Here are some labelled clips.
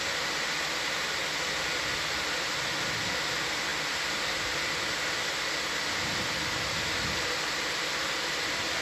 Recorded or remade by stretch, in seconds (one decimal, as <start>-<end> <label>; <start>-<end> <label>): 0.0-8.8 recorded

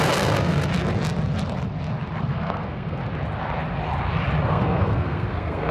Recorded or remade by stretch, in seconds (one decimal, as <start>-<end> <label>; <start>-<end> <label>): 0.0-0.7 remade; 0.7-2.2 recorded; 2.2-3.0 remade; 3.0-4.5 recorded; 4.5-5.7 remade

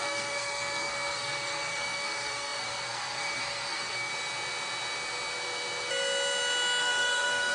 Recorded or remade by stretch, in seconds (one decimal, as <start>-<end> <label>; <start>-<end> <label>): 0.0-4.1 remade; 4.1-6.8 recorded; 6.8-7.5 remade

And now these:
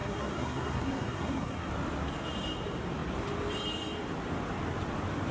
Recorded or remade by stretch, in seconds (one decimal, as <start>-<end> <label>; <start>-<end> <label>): 0.0-1.7 remade; 1.7-5.3 recorded

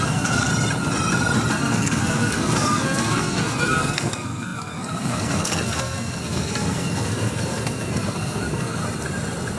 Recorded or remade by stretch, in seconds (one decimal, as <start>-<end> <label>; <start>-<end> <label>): 0.0-0.5 remade; 0.5-1.5 recorded; 1.5-8.8 remade; 8.8-9.6 recorded

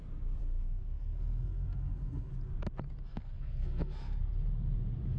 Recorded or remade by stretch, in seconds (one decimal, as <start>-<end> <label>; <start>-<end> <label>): 0.0-0.4 recorded; 0.4-2.3 remade; 2.3-3.1 recorded; 3.1-4.2 remade; 4.2-5.2 recorded